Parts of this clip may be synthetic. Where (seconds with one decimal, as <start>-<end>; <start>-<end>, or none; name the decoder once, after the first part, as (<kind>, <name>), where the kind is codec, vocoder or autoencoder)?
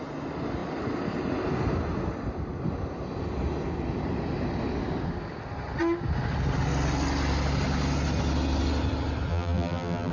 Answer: 9.3-10.1 (vocoder, BigVGAN v2)